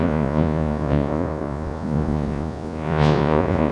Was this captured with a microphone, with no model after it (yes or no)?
no